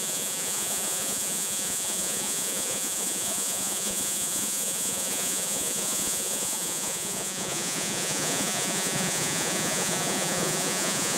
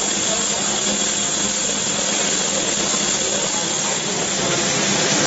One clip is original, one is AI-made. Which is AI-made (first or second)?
first